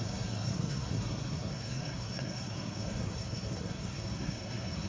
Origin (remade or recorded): remade